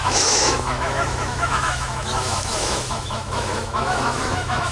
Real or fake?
fake